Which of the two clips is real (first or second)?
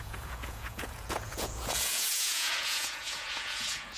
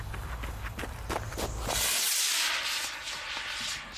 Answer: second